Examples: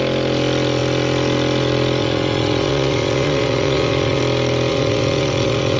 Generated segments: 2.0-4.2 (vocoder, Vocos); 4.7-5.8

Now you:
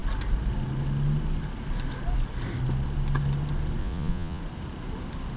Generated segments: 3.8-4.4 (vocoder, Vocos)

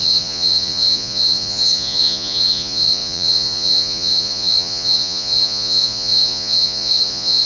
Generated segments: 0.0-7.5 (vocoder, Vocos)